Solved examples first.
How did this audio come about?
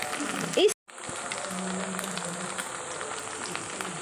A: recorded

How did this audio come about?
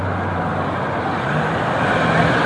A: recorded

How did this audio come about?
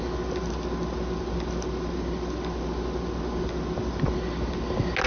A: recorded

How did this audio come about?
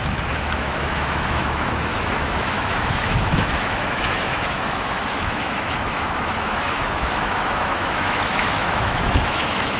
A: remade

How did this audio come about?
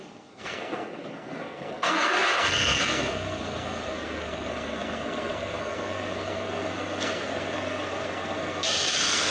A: remade